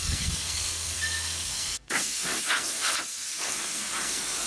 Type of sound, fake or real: fake